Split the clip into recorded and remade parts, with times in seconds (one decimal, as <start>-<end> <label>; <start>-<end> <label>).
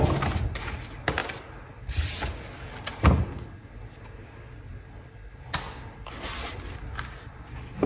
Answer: 0.0-7.9 recorded